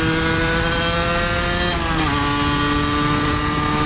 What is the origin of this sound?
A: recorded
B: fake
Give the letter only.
A